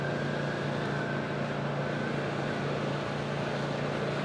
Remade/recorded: recorded